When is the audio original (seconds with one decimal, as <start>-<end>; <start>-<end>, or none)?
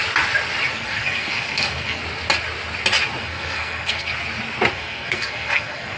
0.0-0.7; 2.0-3.2; 4.1-4.7